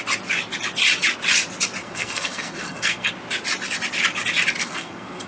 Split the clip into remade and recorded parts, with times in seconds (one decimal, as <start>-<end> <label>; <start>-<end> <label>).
0.0-1.8 recorded; 1.8-3.1 remade; 3.1-4.6 recorded; 4.6-5.3 remade